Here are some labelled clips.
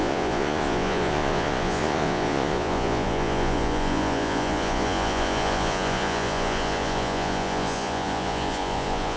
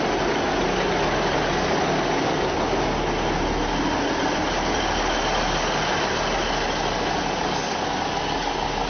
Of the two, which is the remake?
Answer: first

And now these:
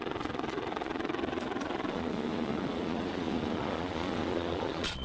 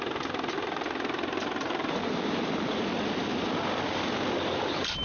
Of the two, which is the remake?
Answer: first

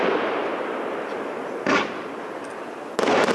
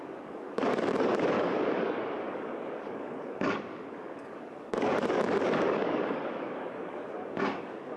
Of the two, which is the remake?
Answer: second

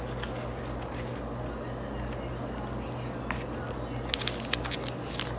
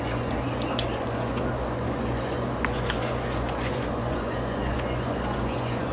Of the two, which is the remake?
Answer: second